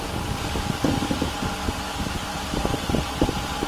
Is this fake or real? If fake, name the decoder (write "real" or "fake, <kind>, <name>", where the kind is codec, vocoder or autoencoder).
real